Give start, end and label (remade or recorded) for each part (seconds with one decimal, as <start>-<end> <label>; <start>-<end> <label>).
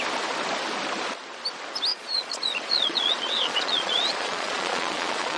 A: 0.0-1.9 recorded; 1.9-5.4 remade